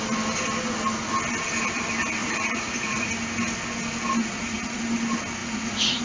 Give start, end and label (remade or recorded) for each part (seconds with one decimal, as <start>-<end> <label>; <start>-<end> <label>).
0.0-2.2 recorded; 2.2-3.1 remade; 3.1-4.2 recorded; 4.2-4.8 remade; 4.8-5.4 recorded; 5.4-6.0 remade